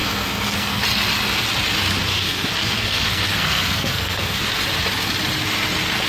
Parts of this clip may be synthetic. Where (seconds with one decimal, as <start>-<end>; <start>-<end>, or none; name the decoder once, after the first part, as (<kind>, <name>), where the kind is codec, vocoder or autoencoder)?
0.0-0.8 (codec, SNAC); 2.1-4.5